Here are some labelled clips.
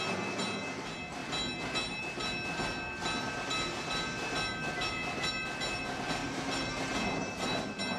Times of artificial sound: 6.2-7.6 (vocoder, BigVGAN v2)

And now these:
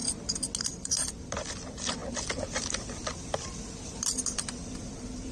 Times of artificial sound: 0.6-2.0 (vocoder, BigVGAN v2); 3.3-5.3

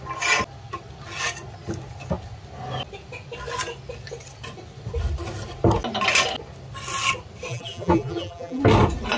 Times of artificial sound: 7.5-8.6 (vocoder, BigVGAN v2)

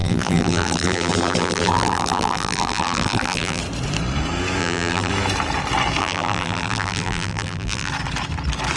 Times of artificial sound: 0.0-3.6 (vocoder, BigVGAN v2); 4.6-5.1; 6.0-7.9

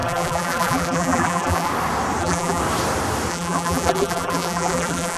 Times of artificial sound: 0.0-1.7 (vocoder, BigVGAN v2); 2.2-2.6; 3.3-5.2

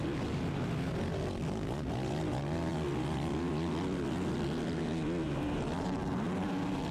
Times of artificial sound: none